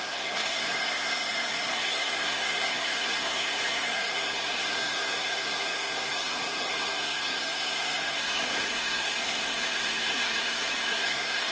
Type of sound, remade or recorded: remade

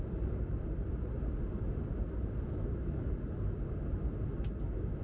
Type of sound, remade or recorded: recorded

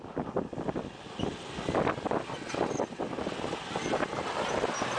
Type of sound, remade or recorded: recorded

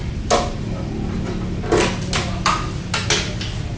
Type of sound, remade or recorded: recorded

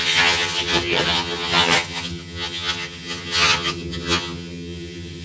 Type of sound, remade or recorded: remade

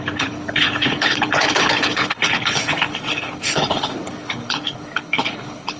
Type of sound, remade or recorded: remade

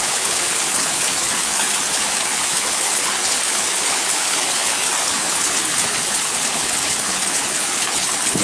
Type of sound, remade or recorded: remade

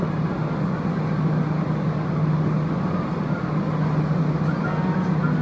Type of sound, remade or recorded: recorded